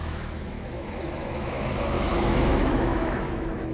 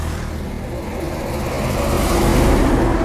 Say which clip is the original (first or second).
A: second